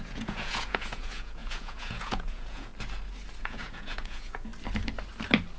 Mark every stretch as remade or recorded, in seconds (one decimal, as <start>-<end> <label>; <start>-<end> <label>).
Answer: 0.0-2.7 remade; 2.7-3.4 recorded; 3.4-4.5 remade; 4.5-5.6 recorded